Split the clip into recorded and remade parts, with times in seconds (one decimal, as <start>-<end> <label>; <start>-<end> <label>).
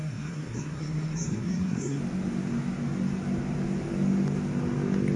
0.0-2.0 remade; 2.0-5.2 recorded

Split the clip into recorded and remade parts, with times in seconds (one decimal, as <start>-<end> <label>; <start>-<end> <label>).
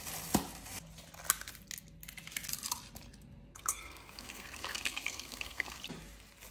0.0-3.5 recorded; 3.5-5.8 remade; 5.8-6.5 recorded